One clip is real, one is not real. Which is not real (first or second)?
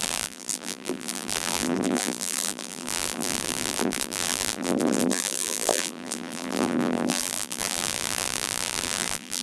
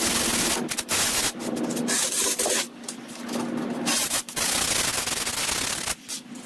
first